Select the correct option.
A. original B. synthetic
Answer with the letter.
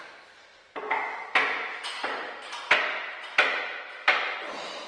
A